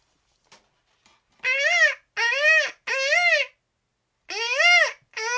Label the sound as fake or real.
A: real